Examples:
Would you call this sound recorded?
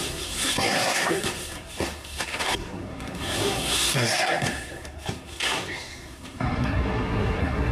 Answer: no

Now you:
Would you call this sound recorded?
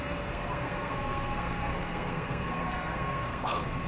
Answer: no